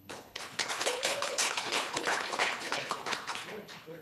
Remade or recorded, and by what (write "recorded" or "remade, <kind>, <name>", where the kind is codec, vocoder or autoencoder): remade, codec, HILCodec